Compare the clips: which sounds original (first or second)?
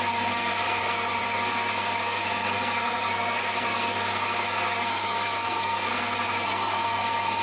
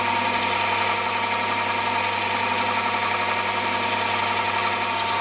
second